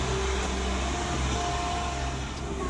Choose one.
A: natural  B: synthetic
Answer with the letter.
A